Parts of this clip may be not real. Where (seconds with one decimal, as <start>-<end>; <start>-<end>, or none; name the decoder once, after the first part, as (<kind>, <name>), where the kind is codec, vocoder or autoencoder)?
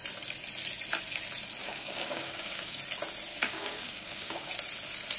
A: 1.6-2.8 (codec, DAC); 3.3-4.5